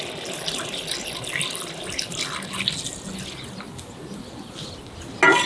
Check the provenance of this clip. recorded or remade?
recorded